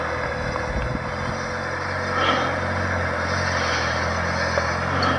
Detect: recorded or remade recorded